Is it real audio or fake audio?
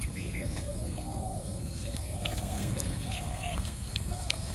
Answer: fake